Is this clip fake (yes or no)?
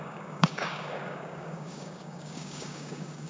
yes